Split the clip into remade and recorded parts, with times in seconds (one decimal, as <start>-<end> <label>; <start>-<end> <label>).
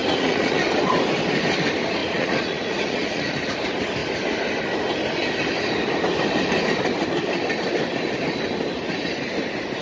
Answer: 0.0-0.6 remade; 0.6-2.0 recorded; 2.0-3.4 remade; 3.4-9.8 recorded